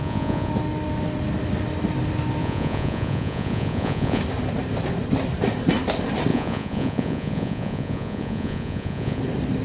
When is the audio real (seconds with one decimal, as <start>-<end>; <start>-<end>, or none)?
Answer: 0.5-2.4; 4.2-6.3; 9.2-9.6